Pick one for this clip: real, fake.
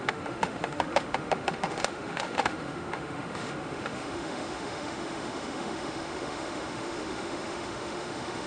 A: fake